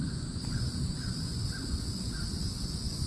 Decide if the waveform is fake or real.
fake